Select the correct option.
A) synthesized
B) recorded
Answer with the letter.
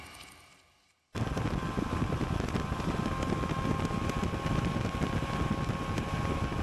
B